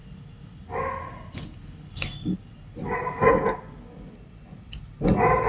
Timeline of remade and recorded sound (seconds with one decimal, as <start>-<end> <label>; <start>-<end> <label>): 0.0-5.5 recorded